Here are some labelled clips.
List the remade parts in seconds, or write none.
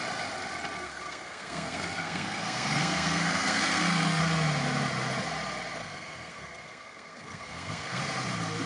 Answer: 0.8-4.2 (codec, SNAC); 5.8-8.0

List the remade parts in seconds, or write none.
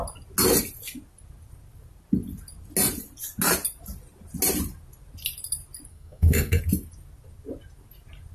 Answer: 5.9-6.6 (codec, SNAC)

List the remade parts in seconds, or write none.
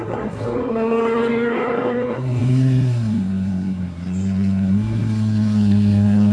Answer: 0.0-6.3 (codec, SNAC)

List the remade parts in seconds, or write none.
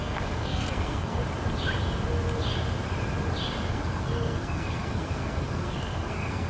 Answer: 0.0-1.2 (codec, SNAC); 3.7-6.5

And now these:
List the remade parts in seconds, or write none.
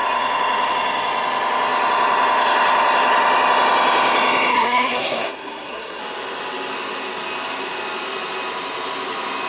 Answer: 4.5-6.0 (codec, SNAC)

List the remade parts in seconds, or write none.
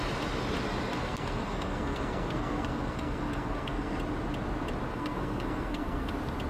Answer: 0.9-4.0 (codec, SNAC); 4.9-6.1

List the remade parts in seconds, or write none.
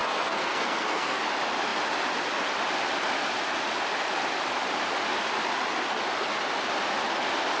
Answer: 0.0-1.2 (codec, SNAC)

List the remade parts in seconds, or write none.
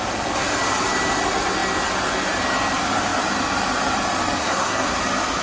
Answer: 4.4-5.0 (codec, SNAC)